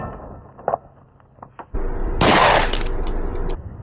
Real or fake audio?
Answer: real